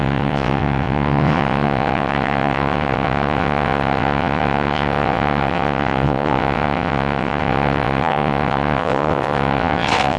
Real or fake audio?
fake